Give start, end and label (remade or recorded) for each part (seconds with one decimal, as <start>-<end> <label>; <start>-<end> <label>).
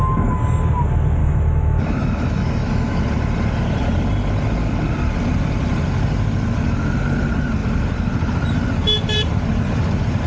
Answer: 0.0-1.2 recorded; 1.2-3.0 remade; 3.0-10.3 recorded